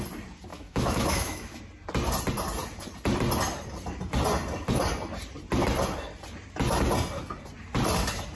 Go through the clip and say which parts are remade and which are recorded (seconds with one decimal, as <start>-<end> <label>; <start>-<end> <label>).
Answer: 0.0-0.5 recorded; 0.5-1.6 remade; 1.6-8.4 recorded